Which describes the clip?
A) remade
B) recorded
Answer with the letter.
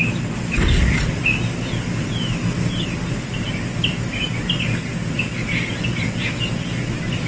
B